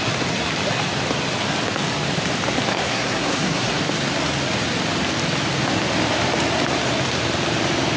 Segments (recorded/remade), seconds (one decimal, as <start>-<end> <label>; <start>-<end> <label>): 0.0-2.7 recorded; 2.7-3.8 remade; 3.8-8.0 recorded